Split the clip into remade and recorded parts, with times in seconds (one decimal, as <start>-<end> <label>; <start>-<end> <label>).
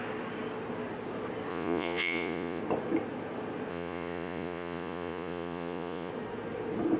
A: 0.0-1.5 recorded; 1.5-2.6 remade; 2.6-3.7 recorded; 3.7-6.1 remade; 6.1-7.0 recorded